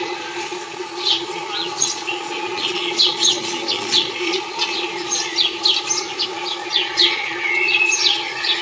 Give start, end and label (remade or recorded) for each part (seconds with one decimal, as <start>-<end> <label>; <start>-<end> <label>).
0.0-5.5 remade; 5.5-6.3 recorded; 6.3-8.6 remade